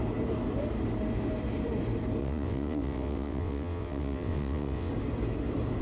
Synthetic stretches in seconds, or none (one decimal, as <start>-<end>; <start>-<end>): 2.2-4.9